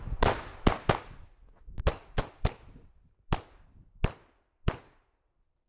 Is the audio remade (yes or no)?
no